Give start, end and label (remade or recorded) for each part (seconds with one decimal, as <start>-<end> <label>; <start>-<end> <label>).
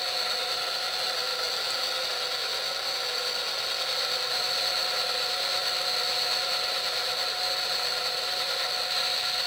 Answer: 0.0-9.5 recorded